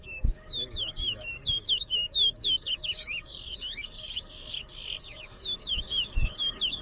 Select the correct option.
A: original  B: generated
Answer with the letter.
B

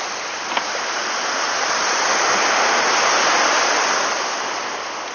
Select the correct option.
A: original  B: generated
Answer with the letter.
A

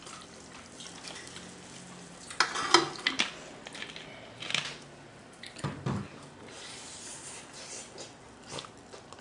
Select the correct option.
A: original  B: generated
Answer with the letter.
A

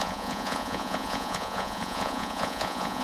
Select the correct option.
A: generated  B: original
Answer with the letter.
A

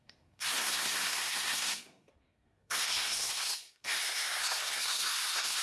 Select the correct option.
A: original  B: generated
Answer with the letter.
B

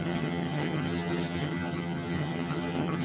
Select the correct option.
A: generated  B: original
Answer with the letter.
A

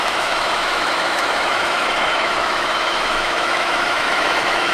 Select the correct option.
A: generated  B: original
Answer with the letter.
A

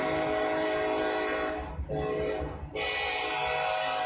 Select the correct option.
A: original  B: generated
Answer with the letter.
A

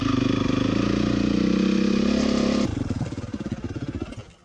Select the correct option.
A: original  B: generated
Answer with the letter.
A